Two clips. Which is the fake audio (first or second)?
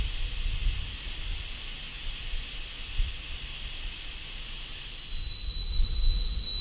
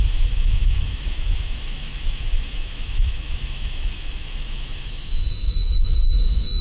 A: second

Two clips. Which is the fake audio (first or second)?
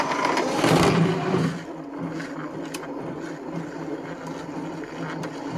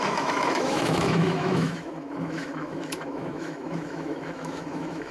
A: second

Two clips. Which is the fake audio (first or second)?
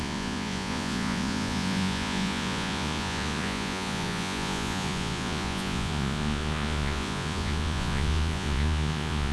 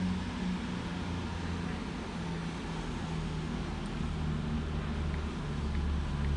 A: first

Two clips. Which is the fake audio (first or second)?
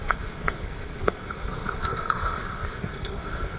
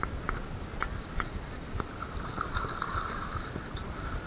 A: first